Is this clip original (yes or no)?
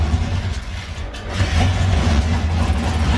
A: no